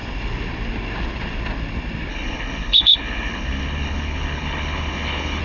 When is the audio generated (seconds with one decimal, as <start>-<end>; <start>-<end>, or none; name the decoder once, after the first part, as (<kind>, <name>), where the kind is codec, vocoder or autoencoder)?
2.1-5.4 (codec, HILCodec)